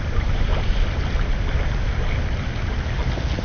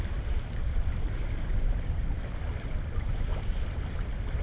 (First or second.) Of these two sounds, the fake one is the second